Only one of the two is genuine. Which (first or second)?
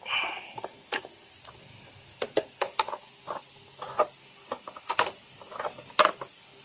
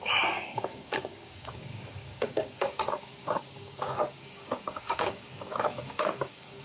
first